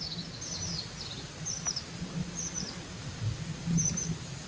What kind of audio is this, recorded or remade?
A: recorded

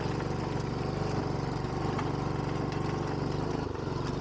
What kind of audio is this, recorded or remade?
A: recorded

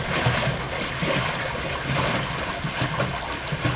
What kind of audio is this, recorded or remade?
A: recorded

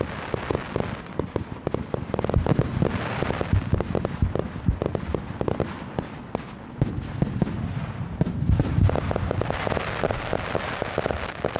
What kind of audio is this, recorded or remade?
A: recorded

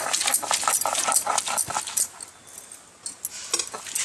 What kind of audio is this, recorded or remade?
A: recorded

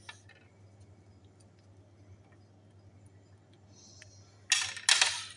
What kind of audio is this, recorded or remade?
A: recorded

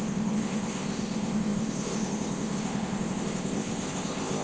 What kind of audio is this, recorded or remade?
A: remade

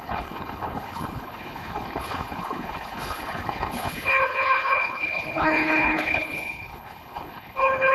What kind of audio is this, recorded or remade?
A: remade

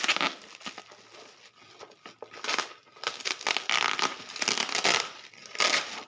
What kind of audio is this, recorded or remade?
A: recorded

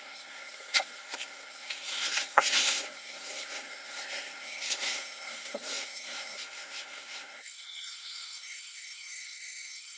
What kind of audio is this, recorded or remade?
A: remade